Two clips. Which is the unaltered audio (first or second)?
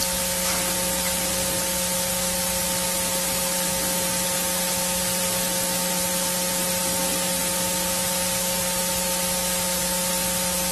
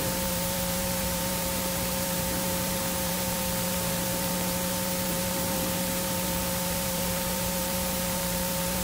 first